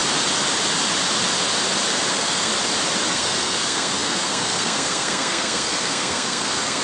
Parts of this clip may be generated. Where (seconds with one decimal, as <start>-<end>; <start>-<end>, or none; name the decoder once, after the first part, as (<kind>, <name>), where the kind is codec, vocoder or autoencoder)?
2.1-2.5 (codec, SNAC); 3.1-6.8